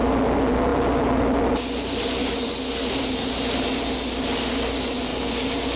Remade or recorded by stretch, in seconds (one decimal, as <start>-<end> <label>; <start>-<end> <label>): 0.0-0.7 recorded; 0.7-1.5 remade; 1.5-2.2 recorded; 2.2-3.7 remade; 3.7-5.8 recorded